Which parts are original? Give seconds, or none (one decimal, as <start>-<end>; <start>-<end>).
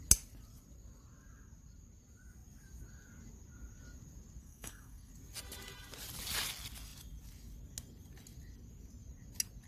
0.0-4.4; 5.1-9.7